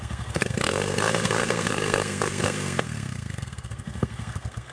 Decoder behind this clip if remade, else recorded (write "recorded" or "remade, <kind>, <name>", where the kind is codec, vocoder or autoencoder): remade, codec, SNAC